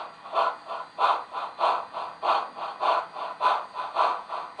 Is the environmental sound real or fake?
real